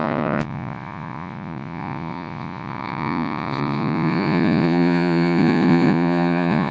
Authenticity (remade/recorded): remade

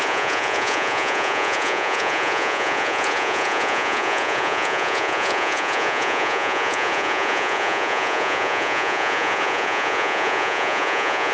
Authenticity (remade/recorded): remade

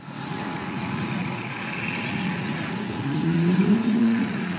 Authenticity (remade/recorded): remade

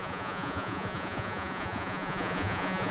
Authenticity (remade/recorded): remade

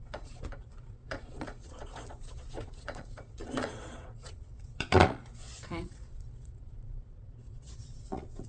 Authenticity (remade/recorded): remade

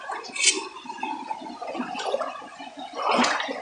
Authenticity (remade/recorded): remade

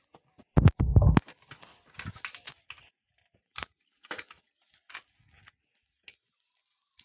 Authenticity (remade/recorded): recorded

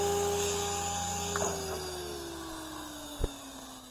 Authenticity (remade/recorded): recorded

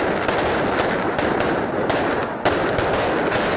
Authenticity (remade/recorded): recorded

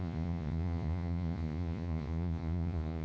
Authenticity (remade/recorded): remade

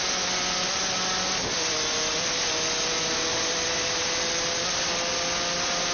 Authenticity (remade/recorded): recorded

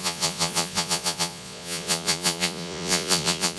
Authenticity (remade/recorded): remade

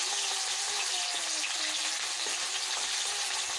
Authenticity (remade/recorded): recorded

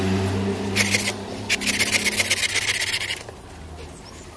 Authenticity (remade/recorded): recorded